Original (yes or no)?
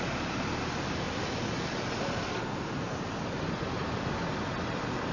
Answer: yes